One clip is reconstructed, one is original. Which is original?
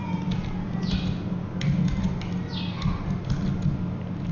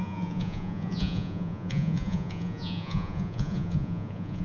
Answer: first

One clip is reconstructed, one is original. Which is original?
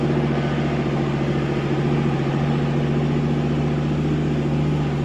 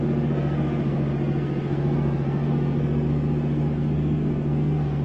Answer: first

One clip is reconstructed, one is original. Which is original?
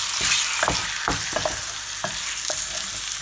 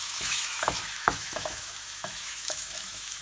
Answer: first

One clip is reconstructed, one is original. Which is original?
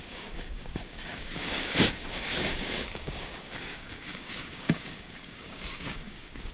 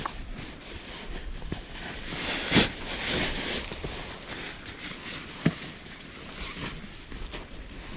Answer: second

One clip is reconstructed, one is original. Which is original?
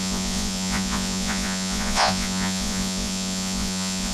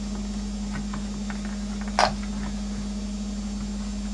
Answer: second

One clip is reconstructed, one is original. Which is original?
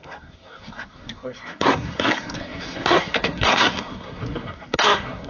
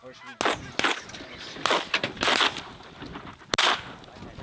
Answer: second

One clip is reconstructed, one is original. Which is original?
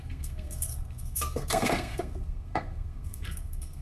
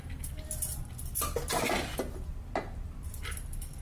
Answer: second